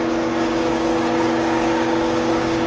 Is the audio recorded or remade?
remade